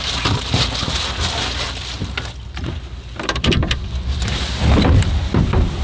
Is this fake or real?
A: fake